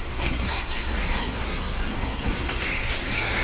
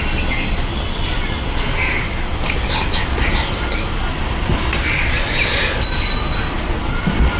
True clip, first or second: second